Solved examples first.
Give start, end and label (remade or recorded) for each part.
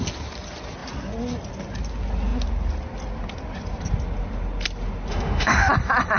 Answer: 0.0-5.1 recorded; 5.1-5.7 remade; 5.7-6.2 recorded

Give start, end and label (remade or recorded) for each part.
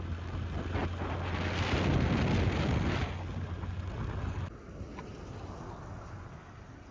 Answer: 0.0-6.9 recorded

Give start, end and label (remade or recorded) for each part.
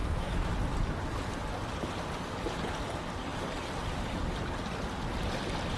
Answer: 0.0-0.5 remade; 0.5-5.8 recorded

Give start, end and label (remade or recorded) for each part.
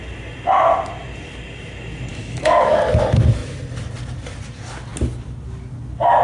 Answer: 0.0-2.1 recorded; 2.1-2.7 remade; 2.7-6.2 recorded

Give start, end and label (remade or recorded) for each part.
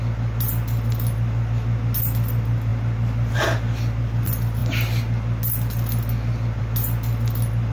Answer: 0.0-7.7 recorded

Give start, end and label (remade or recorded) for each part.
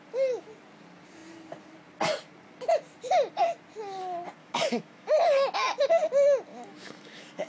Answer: 0.0-4.4 recorded; 4.4-5.2 remade; 5.2-6.5 recorded; 6.5-7.5 remade